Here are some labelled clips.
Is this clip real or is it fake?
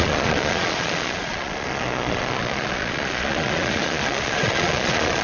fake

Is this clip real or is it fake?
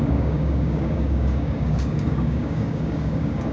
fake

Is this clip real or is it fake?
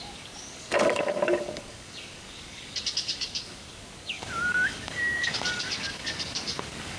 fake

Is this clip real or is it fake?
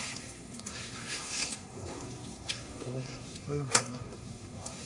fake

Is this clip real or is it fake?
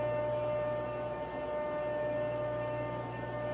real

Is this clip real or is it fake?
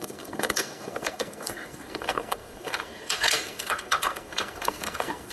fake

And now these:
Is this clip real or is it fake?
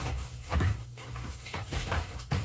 fake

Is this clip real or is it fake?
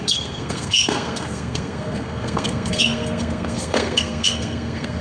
fake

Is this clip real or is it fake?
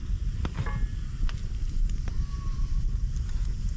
real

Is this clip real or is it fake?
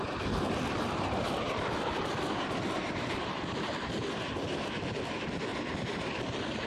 fake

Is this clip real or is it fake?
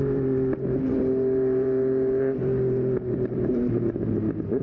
fake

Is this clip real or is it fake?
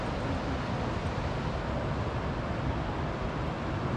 real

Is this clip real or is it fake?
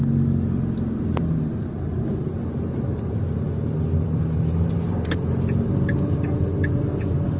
real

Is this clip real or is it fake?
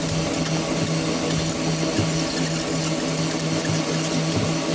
real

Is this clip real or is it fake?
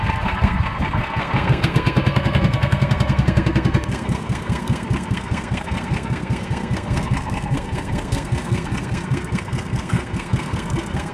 fake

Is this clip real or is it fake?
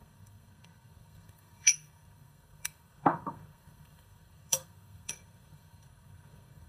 fake